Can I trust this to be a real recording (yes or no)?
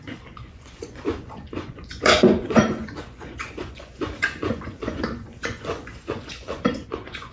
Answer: no